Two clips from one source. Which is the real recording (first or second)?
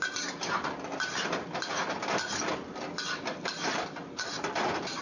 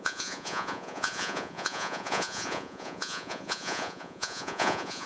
first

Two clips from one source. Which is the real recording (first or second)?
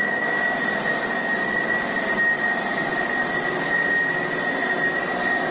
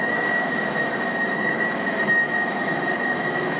first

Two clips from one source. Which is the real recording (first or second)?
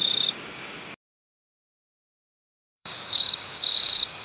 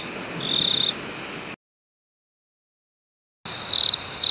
second